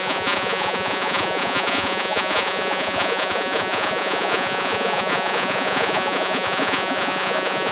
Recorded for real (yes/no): no